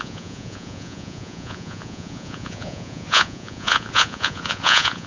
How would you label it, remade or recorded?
remade